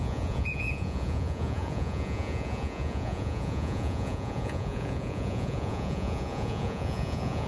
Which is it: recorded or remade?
remade